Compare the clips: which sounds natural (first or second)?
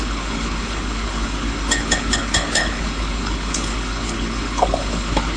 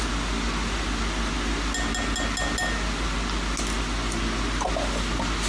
second